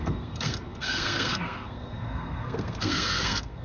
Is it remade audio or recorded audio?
remade